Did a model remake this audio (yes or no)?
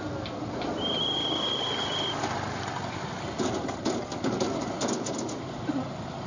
no